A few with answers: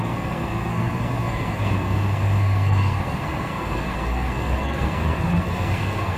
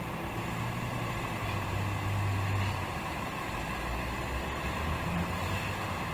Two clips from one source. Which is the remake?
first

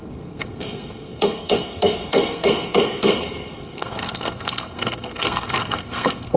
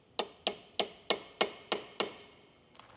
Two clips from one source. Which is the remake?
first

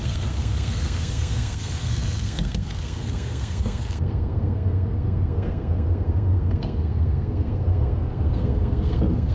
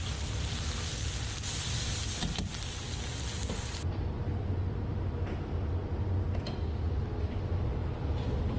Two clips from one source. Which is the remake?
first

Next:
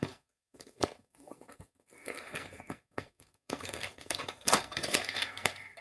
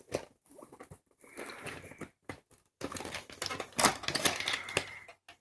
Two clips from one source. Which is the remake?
first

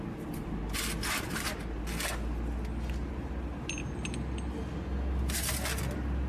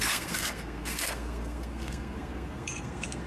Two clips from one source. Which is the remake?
second